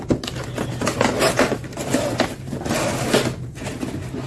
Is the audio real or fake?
real